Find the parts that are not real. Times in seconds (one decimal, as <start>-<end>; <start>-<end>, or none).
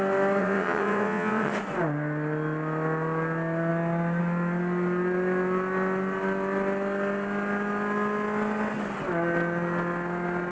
0.4-1.5